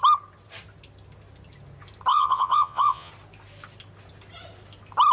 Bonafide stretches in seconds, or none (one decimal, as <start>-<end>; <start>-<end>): 0.0-2.1; 3.1-5.1